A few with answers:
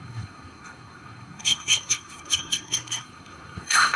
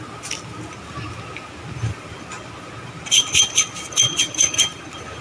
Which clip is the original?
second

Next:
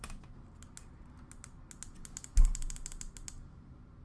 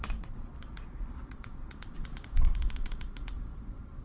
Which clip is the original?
first